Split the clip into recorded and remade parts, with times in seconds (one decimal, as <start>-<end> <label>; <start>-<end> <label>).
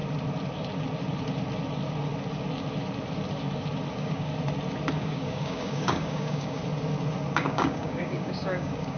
0.0-3.9 recorded; 3.9-4.3 remade; 4.3-4.9 recorded; 4.9-6.6 remade; 6.6-7.3 recorded; 7.3-9.0 remade